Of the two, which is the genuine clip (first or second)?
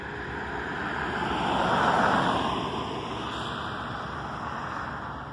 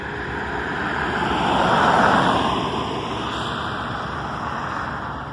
first